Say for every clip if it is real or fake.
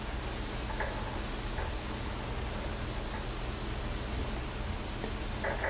real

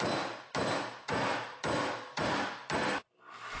real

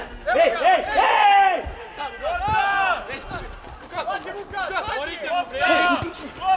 real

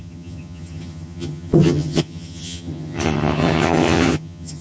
fake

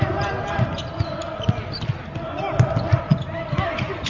real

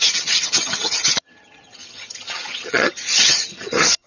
fake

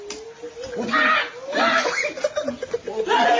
real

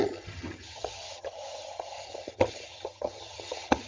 fake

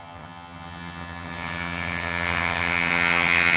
fake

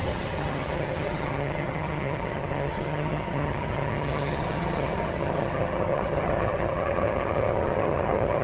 fake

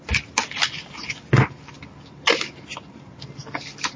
real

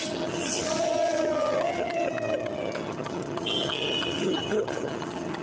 fake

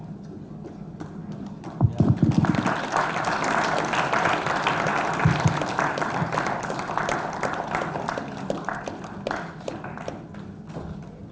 real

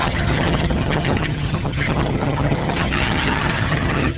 fake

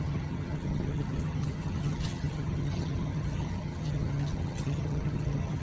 fake